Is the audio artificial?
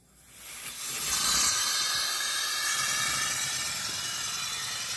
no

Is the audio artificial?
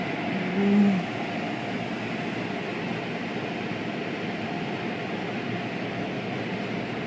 no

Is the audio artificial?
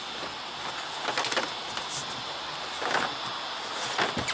no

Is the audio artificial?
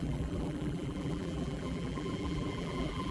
yes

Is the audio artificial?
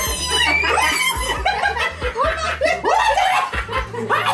no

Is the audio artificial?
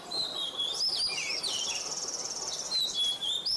yes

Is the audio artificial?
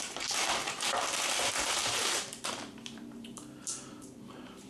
yes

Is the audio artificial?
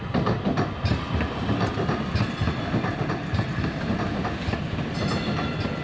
no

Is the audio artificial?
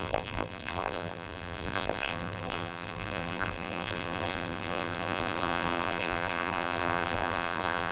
yes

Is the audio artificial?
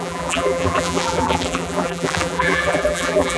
yes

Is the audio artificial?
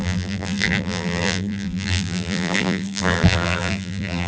yes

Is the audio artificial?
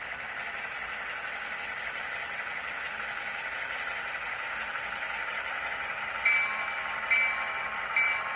no